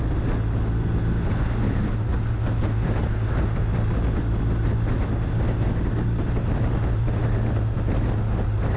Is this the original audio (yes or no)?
yes